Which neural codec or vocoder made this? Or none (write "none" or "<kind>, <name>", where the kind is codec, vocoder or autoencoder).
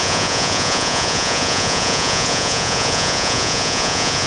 vocoder, Vocos